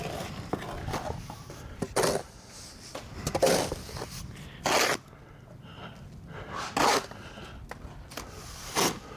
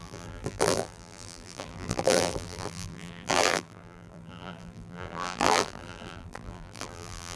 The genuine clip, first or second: first